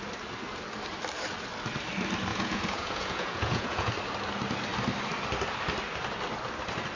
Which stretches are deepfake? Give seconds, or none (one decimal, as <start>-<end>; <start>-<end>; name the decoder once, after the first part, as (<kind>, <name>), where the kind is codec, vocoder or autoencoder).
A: 2.3-3.9 (vocoder, Vocos)